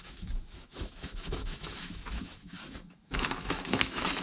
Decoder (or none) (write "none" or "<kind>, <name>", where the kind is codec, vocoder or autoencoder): autoencoder, DAC-VAE